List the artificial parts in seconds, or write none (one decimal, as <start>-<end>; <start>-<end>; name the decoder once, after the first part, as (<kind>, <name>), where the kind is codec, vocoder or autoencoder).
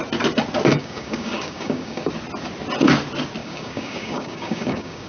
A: 0.7-2.1 (codec, DAC); 3.4-5.1